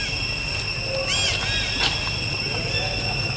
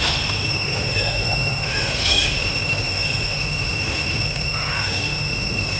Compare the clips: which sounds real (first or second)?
first